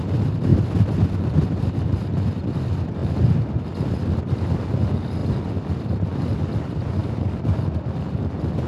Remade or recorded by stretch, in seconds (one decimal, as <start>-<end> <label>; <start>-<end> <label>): 0.0-7.0 recorded; 7.0-7.5 remade; 7.5-8.7 recorded